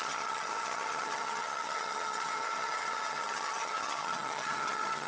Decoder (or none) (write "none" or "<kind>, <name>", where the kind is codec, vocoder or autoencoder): vocoder, HiFi-GAN